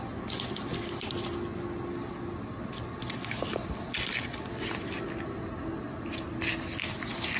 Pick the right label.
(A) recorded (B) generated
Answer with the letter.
A